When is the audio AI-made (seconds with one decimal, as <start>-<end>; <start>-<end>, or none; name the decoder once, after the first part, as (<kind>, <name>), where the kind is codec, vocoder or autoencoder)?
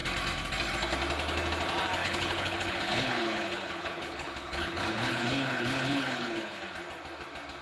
2.0-6.6 (codec, HILCodec)